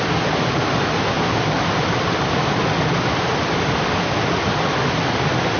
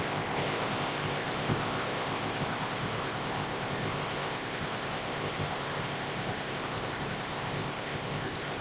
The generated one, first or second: second